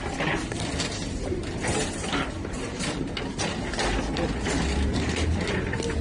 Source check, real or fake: real